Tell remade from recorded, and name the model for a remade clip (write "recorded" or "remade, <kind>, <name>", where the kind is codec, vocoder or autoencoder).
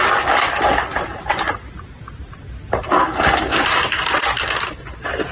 recorded